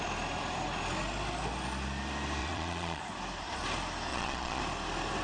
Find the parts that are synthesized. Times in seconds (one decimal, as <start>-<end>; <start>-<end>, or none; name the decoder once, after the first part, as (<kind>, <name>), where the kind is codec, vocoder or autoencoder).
2.4-3.0 (vocoder, Vocos); 4.1-4.6